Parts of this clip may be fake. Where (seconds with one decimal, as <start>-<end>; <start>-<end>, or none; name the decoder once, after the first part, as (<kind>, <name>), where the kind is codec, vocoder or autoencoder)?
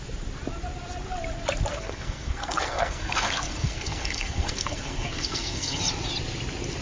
1.7-5.8 (codec, SNAC)